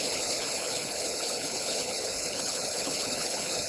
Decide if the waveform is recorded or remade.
remade